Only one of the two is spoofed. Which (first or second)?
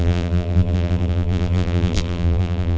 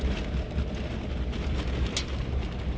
first